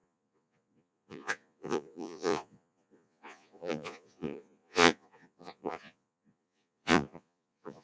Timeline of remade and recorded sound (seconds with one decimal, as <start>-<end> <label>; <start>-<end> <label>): 0.0-7.8 remade